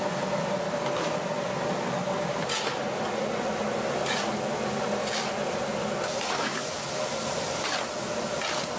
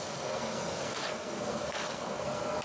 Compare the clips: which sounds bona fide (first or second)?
first